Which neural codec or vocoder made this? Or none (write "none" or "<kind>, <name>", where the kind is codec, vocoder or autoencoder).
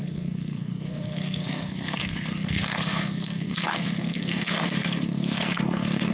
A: codec, SNAC